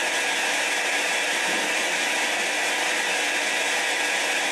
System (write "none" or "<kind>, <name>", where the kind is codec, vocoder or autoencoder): none